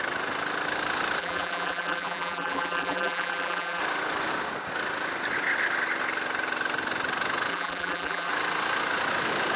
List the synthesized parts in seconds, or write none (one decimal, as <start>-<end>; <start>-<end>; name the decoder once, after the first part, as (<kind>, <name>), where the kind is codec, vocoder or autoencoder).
1.2-3.8 (vocoder, BigVGAN v2); 7.5-8.3